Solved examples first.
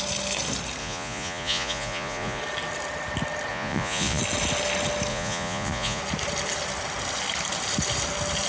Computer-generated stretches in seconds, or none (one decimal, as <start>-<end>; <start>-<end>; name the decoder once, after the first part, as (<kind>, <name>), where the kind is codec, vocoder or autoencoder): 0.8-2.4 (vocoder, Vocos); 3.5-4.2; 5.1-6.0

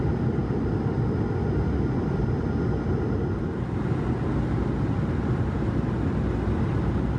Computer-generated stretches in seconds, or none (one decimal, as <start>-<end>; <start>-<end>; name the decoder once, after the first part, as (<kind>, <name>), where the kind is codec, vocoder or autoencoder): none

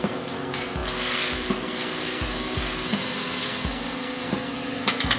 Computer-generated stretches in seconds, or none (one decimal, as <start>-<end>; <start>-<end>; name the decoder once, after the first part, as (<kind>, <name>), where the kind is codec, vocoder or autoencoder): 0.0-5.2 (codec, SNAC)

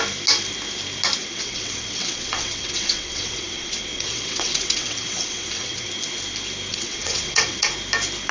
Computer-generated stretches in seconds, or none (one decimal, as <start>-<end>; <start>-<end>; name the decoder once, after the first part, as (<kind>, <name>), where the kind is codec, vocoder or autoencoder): 1.2-5.9 (vocoder, WaveNeXt); 6.7-7.7

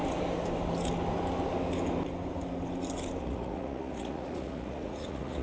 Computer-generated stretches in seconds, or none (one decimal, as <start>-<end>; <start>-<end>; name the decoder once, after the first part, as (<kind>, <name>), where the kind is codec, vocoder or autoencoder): 3.2-5.4 (vocoder, Vocos)

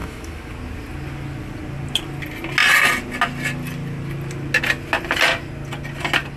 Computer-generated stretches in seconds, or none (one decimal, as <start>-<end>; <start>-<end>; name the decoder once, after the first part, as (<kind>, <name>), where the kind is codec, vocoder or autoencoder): 0.0-0.5 (autoencoder, DAC-VAE)

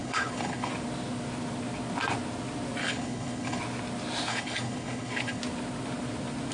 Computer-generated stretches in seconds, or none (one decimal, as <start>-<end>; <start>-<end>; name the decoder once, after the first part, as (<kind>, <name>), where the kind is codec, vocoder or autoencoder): 0.0-0.7 (codec, HILCodec); 2.8-3.6; 4.3-5.4